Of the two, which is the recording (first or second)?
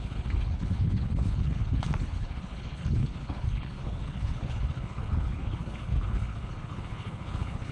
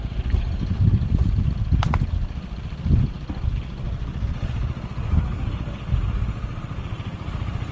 second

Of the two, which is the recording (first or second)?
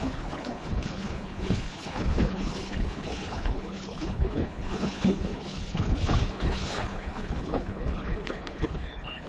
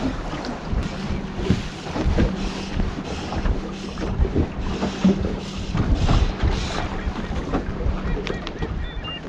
second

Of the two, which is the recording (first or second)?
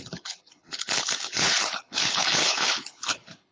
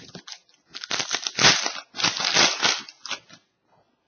second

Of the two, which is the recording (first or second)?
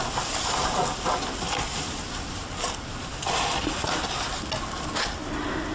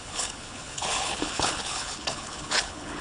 first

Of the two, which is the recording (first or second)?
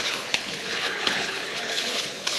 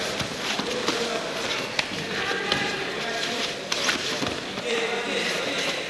second